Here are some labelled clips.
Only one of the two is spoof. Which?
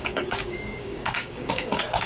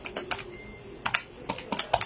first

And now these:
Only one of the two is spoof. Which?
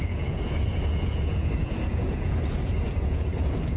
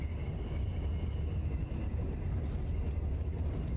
first